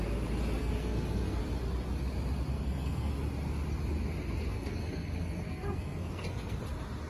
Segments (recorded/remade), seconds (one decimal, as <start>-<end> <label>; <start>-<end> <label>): 0.0-0.6 recorded; 0.6-1.4 remade; 1.4-2.5 recorded; 2.5-3.1 remade; 3.1-4.5 recorded; 4.5-6.6 remade; 6.6-7.1 recorded

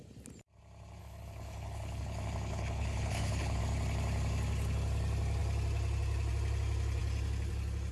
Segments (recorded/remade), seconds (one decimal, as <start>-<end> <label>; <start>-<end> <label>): 0.0-1.0 recorded; 1.0-3.6 remade; 3.6-7.9 recorded

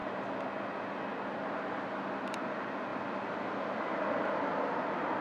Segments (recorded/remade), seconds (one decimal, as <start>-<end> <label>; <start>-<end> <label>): 0.0-5.2 recorded

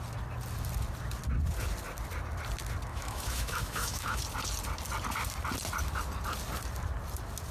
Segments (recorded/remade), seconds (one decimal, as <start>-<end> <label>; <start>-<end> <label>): 0.0-2.9 recorded; 2.9-4.2 remade; 4.2-7.5 recorded

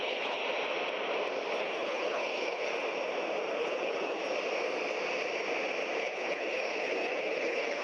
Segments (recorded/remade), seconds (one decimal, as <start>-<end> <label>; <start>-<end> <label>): 0.0-0.4 remade; 0.4-1.6 recorded; 1.6-2.7 remade; 2.7-3.6 recorded; 3.6-4.2 remade; 4.2-6.0 recorded; 6.0-7.8 remade

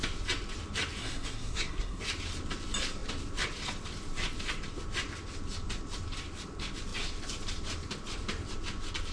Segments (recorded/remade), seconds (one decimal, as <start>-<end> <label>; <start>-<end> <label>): 0.0-1.0 recorded; 1.0-2.0 remade; 2.0-9.1 recorded